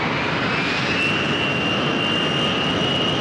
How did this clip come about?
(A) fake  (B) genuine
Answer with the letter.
B